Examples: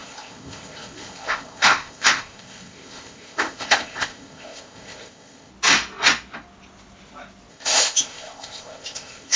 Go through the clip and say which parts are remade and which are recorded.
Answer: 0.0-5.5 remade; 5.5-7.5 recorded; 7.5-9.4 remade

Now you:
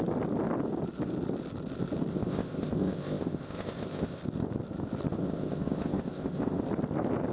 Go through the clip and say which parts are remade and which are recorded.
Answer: 0.0-2.1 recorded; 2.1-4.2 remade; 4.2-5.2 recorded; 5.2-6.6 remade; 6.6-7.3 recorded

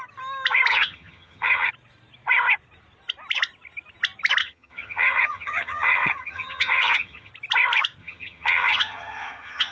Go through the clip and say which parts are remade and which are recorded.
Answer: 0.0-0.7 recorded; 0.7-1.7 remade; 1.7-4.4 recorded; 4.4-7.3 remade; 7.3-8.0 recorded; 8.0-9.7 remade

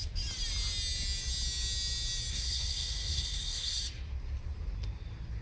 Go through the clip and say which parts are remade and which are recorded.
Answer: 0.0-2.3 recorded; 2.3-3.8 remade; 3.8-5.4 recorded

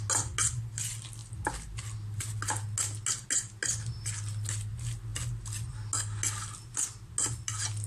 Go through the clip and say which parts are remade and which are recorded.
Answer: 0.0-7.9 recorded